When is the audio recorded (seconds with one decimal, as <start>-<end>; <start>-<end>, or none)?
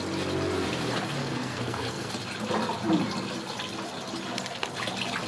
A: 0.0-1.2; 2.1-5.3